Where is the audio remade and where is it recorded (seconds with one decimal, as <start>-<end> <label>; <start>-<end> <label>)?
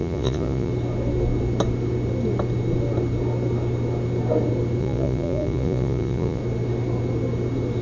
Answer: 0.0-0.7 remade; 0.7-4.8 recorded; 4.8-6.4 remade; 6.4-7.8 recorded